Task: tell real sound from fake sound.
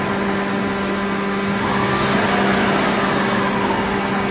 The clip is real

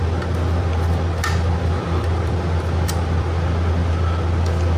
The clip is real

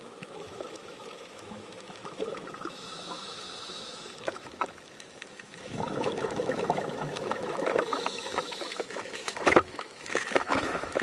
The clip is fake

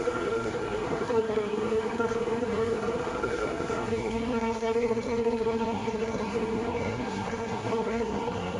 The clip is fake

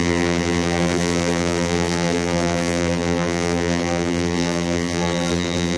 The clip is fake